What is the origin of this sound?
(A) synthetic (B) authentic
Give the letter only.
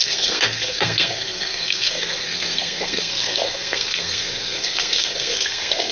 A